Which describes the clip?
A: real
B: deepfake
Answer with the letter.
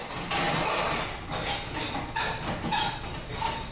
A